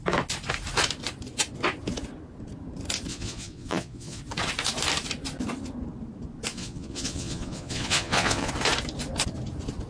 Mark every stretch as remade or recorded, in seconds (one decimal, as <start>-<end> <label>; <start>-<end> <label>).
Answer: 0.0-3.1 recorded; 3.1-4.2 remade; 4.2-6.5 recorded; 6.5-8.5 remade; 8.5-9.9 recorded